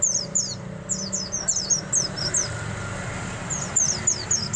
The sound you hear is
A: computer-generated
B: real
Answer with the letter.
B